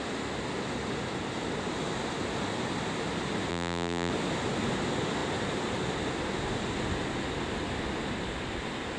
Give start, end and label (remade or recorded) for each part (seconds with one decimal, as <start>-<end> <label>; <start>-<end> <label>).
0.0-3.5 recorded; 3.5-4.1 remade; 4.1-9.0 recorded